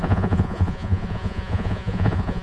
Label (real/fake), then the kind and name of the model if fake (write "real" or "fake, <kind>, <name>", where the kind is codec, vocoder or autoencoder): fake, vocoder, Vocos